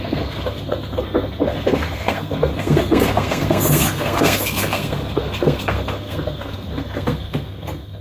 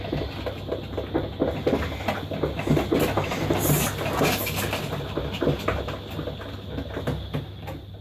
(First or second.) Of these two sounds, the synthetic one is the first